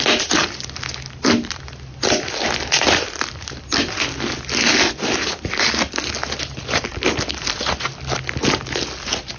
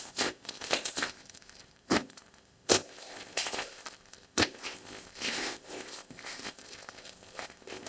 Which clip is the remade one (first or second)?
second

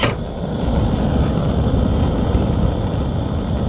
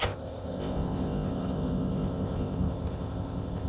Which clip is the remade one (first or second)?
second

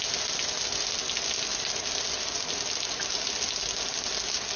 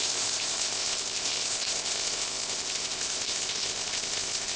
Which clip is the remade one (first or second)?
second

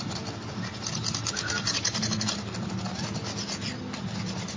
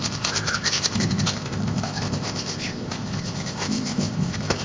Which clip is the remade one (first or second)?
second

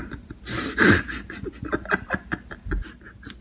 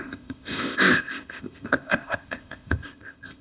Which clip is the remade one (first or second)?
second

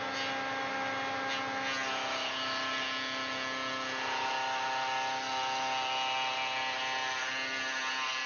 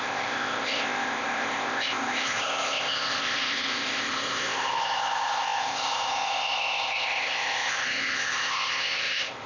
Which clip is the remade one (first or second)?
second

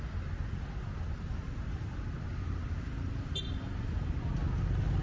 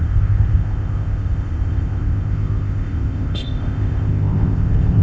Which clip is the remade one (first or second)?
second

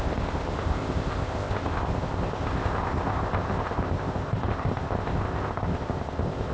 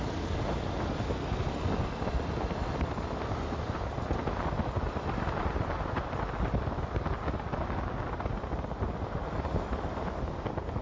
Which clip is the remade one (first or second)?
first